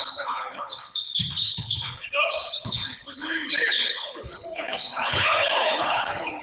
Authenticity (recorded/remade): remade